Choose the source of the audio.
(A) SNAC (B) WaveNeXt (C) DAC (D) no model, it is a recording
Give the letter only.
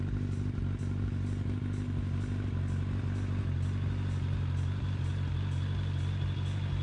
D